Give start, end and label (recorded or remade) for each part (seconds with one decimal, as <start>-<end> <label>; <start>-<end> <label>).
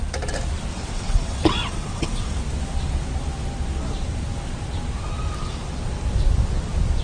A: 0.0-0.7 recorded; 0.7-2.4 remade; 2.4-7.0 recorded